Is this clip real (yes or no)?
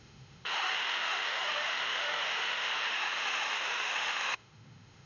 no